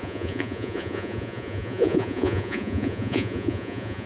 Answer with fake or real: fake